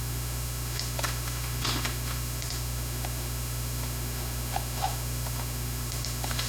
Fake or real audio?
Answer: fake